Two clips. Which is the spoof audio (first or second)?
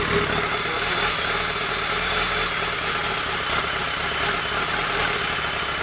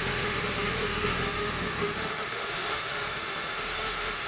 second